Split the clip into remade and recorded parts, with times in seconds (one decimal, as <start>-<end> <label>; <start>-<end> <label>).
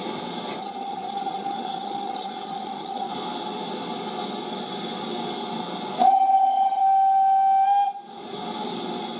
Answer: 0.0-0.6 recorded; 0.6-3.1 remade; 3.1-6.0 recorded; 6.0-6.8 remade; 6.8-9.2 recorded